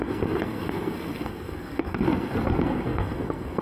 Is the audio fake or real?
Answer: fake